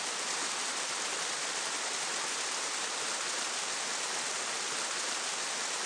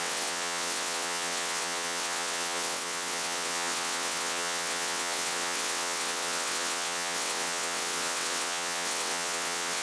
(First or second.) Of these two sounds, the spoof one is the second